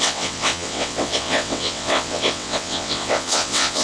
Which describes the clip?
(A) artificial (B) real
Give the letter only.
A